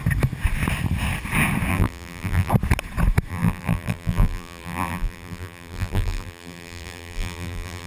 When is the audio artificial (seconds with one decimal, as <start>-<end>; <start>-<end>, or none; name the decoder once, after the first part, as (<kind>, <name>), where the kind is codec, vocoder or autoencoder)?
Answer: 1.7-2.5 (vocoder, BigVGAN v2); 3.3-7.9